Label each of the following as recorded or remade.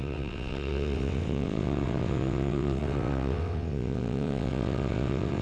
remade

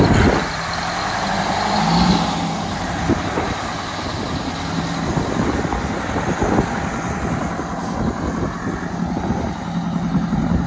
recorded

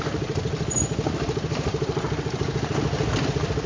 recorded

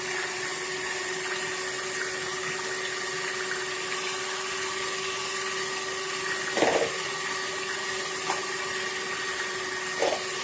recorded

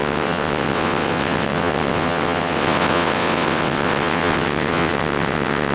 remade